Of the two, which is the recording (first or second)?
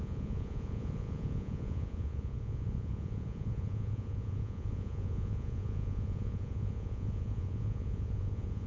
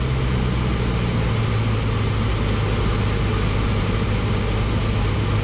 second